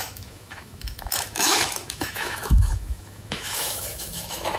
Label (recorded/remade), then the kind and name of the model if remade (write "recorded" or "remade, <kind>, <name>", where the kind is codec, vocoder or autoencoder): remade, autoencoder, DAC-VAE